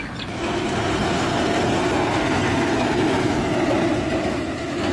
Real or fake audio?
real